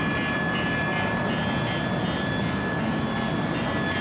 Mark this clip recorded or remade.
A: recorded